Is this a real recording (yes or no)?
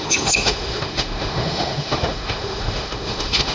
no